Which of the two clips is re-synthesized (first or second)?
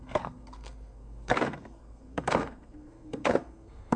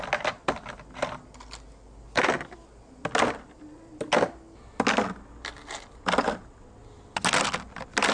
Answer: first